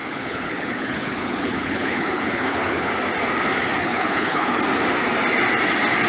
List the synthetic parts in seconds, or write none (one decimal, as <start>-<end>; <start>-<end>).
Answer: 0.0-2.9; 3.8-4.6